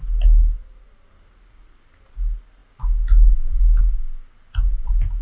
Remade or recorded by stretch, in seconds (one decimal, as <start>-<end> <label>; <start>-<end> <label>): 0.0-5.2 recorded